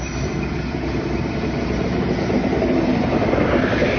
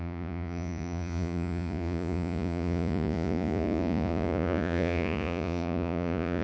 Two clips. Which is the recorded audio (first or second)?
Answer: first